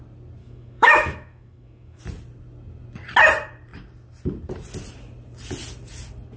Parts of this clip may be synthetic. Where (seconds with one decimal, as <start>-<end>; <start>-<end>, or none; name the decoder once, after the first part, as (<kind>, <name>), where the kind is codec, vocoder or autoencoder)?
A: 0.4-2.0 (autoencoder, DAC-VAE)